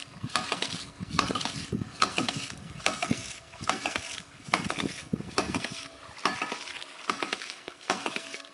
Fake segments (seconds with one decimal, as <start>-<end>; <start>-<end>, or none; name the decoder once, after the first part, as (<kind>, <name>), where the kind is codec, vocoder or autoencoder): 0.0-6.0 (codec, SNAC); 7.1-8.5